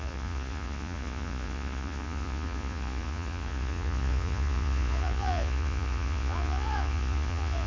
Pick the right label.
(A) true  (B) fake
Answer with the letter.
B